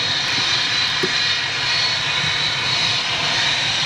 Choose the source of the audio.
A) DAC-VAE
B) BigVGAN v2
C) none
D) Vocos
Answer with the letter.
B